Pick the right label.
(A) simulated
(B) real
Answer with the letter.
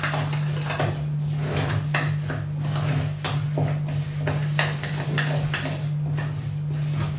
B